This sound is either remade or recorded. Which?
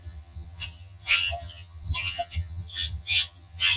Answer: remade